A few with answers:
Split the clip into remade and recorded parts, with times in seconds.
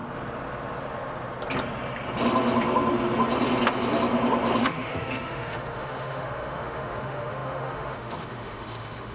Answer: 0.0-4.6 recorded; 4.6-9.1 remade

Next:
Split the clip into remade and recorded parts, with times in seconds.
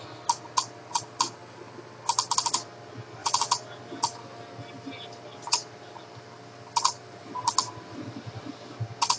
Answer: 0.0-9.2 recorded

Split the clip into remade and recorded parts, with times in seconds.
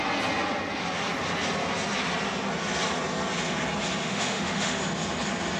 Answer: 0.0-4.0 recorded; 4.0-4.8 remade; 4.8-5.6 recorded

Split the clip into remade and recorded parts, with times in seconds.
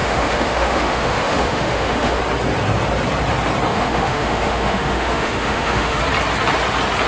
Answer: 0.0-2.2 remade; 2.2-3.7 recorded; 3.7-6.0 remade; 6.0-7.1 recorded